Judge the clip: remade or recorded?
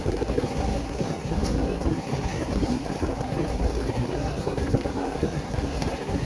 remade